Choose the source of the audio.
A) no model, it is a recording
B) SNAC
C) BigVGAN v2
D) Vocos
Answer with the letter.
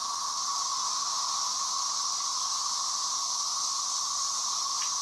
A